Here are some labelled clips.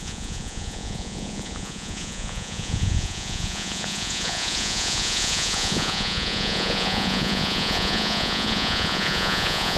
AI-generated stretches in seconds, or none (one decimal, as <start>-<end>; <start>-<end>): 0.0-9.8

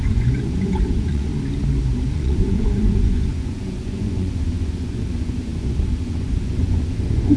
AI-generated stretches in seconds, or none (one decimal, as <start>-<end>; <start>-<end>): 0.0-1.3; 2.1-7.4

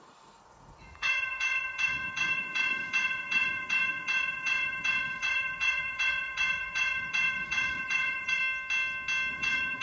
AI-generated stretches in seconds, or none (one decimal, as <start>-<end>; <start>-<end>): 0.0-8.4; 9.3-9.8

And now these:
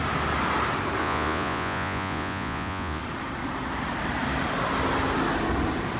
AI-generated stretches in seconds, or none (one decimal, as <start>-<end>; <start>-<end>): 1.0-3.0

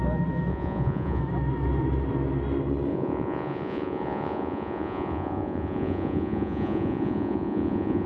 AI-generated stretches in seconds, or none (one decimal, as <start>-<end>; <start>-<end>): 0.5-1.2; 2.9-8.1